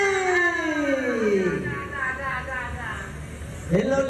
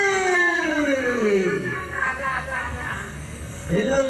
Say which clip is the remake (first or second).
second